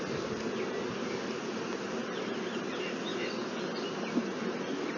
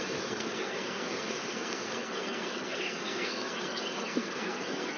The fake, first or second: second